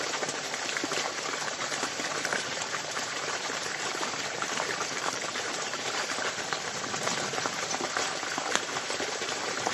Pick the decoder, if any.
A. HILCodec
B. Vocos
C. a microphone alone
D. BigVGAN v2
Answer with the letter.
D